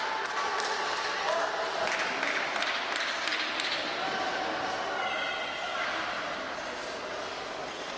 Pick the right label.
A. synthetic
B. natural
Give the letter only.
B